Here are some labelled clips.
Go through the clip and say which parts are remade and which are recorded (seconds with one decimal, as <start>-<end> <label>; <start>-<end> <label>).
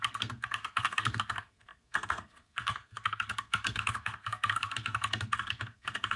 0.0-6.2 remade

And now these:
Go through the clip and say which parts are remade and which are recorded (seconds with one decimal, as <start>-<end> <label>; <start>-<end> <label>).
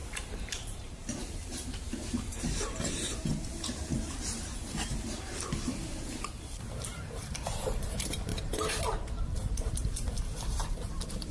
0.0-8.3 remade; 8.3-9.2 recorded; 9.2-11.3 remade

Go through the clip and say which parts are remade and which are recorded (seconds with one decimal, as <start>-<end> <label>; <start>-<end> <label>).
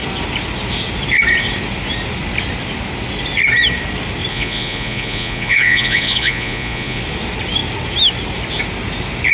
0.0-4.3 recorded; 4.3-7.0 remade; 7.0-9.3 recorded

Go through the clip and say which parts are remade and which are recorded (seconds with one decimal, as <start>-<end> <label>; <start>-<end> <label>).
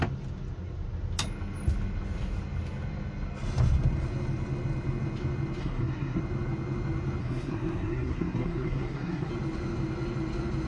0.0-5.6 recorded; 5.6-6.2 remade; 6.2-7.2 recorded; 7.2-9.3 remade; 9.3-10.7 recorded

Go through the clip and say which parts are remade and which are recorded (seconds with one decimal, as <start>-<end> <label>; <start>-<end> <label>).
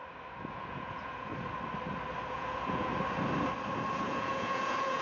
0.0-0.5 recorded; 0.5-1.3 remade; 1.3-2.3 recorded; 2.3-2.9 remade; 2.9-3.9 recorded; 3.9-5.0 remade